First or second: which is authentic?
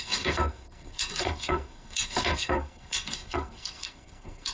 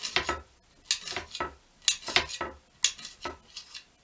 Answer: second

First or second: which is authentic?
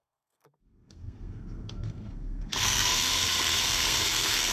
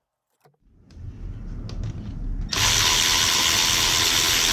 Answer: second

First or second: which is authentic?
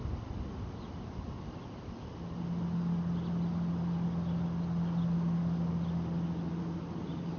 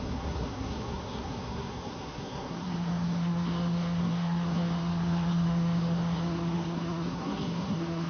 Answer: first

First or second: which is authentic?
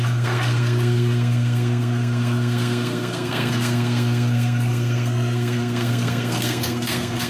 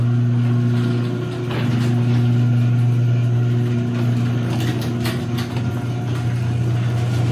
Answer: second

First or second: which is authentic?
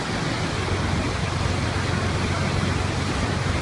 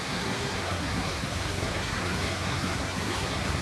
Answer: first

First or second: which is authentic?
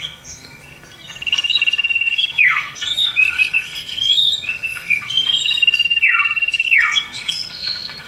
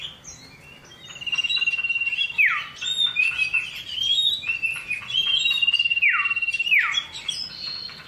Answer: second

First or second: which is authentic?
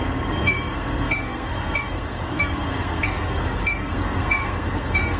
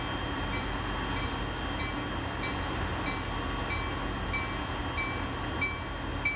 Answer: second